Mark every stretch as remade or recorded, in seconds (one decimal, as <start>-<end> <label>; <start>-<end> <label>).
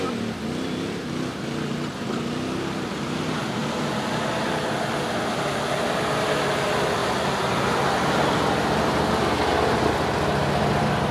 0.0-11.1 recorded